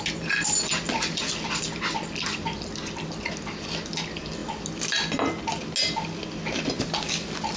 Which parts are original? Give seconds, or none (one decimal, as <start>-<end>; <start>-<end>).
0.0-7.6